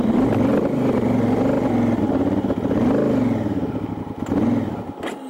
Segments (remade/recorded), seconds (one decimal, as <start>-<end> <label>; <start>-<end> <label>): 0.0-5.3 recorded